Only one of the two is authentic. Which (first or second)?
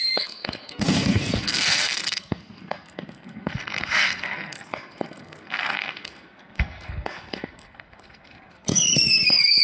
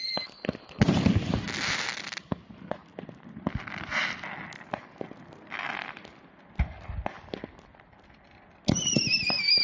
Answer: second